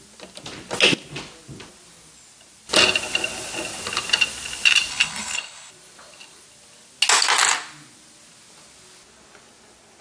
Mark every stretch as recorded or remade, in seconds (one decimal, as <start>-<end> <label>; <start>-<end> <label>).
0.0-4.9 recorded; 4.9-5.7 remade; 5.7-10.0 recorded